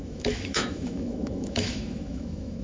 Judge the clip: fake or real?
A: fake